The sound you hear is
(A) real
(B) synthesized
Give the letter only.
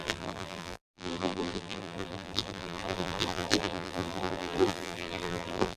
B